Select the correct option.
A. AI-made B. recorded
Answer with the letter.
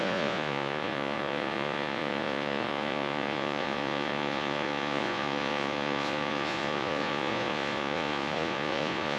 A